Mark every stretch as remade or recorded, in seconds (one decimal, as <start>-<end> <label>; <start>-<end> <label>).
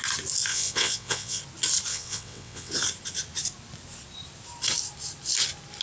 0.0-0.5 recorded; 0.5-1.4 remade; 1.4-1.9 recorded; 1.9-2.7 remade; 2.7-5.8 recorded